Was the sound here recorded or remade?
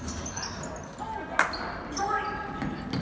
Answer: recorded